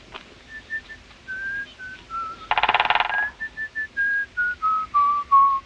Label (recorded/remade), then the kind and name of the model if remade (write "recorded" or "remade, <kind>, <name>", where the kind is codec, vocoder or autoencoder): recorded